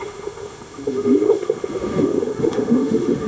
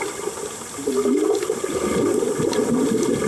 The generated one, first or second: first